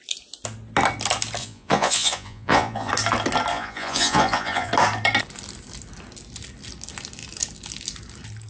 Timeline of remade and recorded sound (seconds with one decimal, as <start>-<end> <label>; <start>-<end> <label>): 0.0-1.4 recorded; 1.4-2.9 remade; 2.9-3.5 recorded; 3.5-4.7 remade; 4.7-8.5 recorded